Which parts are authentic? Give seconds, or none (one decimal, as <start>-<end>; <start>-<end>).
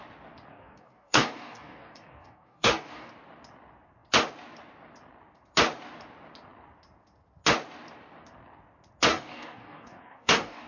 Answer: 0.0-0.5; 3.1-9.1